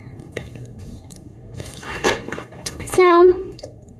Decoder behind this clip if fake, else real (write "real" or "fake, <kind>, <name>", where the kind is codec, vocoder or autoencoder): fake, codec, SNAC